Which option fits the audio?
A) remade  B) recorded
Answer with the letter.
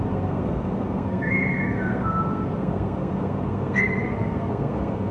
A